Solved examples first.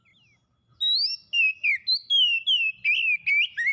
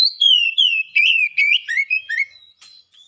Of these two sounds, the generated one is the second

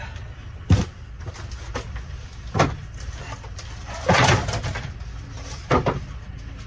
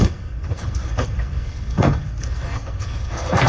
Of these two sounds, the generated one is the second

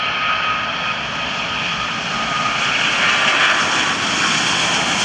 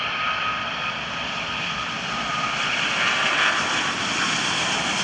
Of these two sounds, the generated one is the second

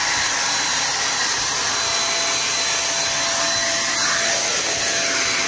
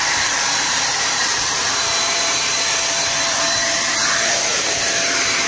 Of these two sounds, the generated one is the second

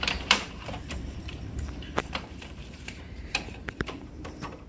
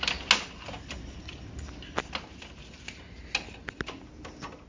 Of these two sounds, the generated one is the first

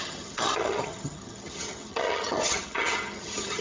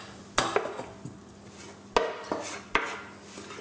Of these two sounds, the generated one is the first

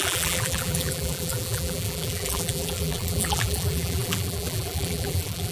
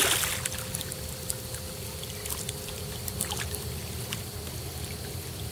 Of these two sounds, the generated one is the first